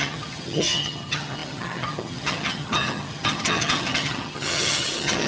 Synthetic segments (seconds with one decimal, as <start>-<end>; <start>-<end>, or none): 0.0-5.3